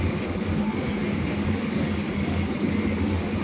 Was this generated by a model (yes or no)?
yes